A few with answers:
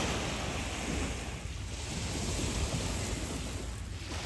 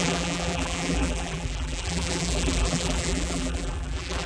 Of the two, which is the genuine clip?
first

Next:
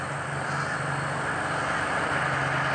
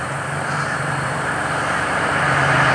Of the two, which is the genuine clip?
first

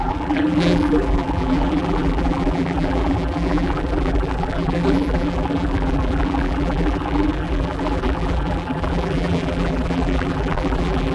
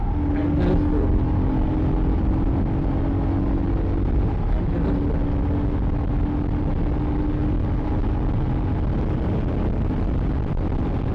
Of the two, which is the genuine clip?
second